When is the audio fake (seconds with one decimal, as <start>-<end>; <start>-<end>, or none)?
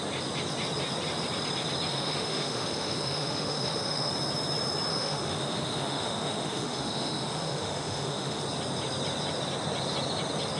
1.9-4.1; 4.9-8.4